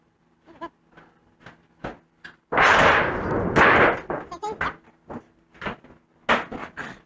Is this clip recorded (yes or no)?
yes